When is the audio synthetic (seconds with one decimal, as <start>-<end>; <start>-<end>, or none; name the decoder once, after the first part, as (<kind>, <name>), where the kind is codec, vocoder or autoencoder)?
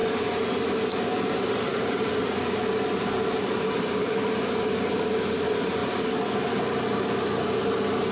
none